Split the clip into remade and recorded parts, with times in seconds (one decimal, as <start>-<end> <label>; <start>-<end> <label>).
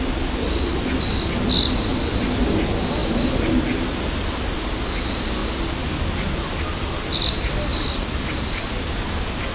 0.0-9.5 recorded